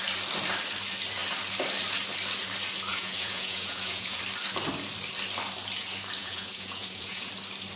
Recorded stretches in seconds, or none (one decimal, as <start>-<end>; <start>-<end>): 0.0-2.9; 4.2-6.2; 7.3-7.8